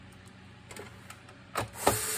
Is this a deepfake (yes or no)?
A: no